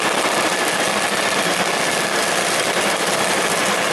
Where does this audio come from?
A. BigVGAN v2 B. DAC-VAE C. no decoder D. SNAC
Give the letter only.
C